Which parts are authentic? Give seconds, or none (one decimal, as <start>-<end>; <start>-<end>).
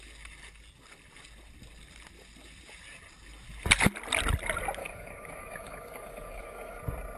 0.0-4.8; 6.8-7.2